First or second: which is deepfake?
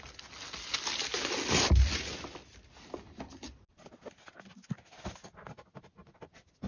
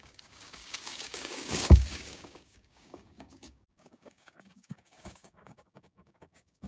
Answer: second